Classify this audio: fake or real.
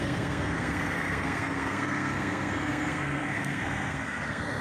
fake